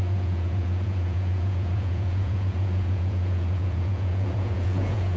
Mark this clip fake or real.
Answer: fake